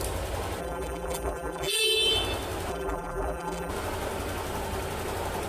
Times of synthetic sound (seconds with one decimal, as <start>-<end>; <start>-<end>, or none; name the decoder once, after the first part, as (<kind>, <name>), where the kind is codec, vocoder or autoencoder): 0.6-1.8 (vocoder, BigVGAN v2); 2.7-3.7